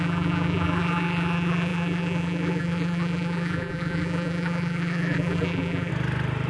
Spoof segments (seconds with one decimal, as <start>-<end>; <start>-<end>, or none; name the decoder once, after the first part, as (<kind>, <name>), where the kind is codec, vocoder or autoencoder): 0.0-5.9 (vocoder, BigVGAN v2)